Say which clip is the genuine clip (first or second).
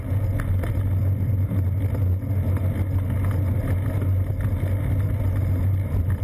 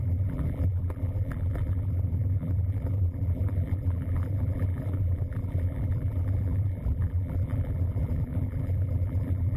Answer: first